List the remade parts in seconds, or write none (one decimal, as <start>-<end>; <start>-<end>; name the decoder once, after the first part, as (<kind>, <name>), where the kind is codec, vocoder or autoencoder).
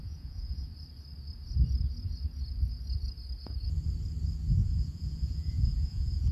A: 0.0-0.7 (vocoder, Vocos); 4.5-6.3